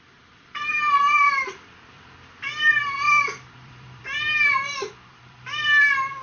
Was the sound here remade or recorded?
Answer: remade